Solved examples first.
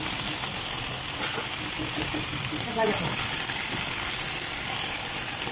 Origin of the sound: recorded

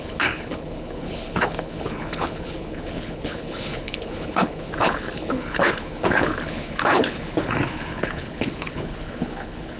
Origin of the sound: remade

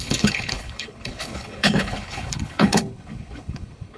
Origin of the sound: remade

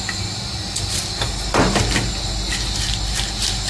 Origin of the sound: recorded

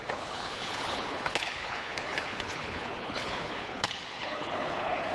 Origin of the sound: remade